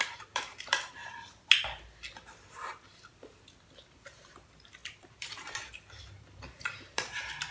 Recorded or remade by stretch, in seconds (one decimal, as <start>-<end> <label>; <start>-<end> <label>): 0.0-1.0 remade; 1.0-3.9 recorded; 3.9-7.5 remade